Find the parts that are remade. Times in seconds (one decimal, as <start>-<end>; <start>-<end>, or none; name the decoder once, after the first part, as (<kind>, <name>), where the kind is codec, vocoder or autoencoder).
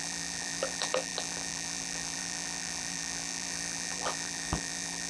0.0-5.1 (vocoder, BigVGAN v2)